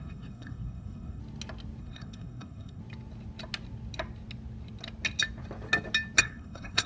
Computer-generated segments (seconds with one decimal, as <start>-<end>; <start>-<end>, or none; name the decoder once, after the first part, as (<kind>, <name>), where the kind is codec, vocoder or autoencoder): 0.0-1.2 (codec, SNAC); 1.8-2.8; 6.2-6.9